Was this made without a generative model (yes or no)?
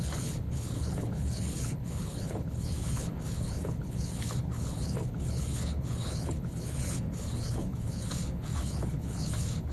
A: no